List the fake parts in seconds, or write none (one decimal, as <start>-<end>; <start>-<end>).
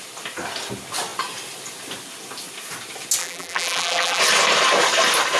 3.2-4.2